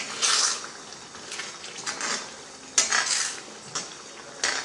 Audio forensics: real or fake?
real